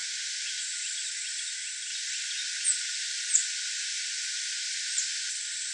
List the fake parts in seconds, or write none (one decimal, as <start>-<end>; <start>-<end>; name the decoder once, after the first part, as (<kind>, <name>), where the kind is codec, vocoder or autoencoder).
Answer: 0.6-1.9 (vocoder, BigVGAN v2); 5.3-5.7